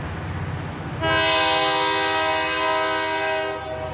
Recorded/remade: recorded